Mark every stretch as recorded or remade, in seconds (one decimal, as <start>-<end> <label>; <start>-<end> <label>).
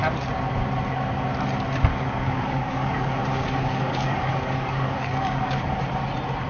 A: 0.0-1.9 recorded; 1.9-5.8 remade; 5.8-6.5 recorded